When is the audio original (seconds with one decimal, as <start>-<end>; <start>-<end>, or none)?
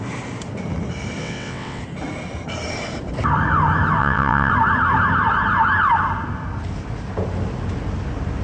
0.0-1.2; 1.8-4.0; 4.5-8.4